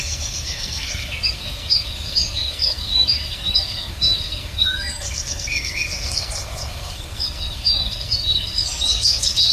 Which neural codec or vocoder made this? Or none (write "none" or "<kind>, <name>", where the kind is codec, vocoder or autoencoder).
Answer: codec, SNAC